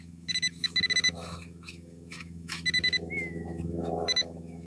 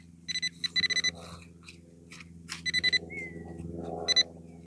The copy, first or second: first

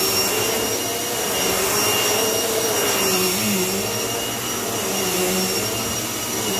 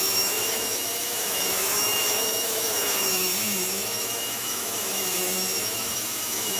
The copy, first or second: second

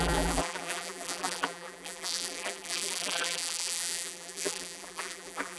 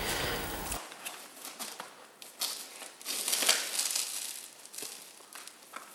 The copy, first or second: first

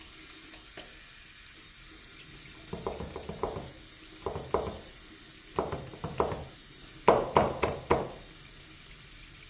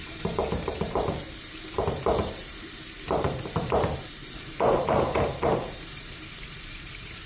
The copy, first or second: second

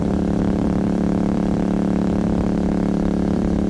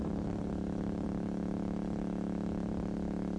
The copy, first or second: first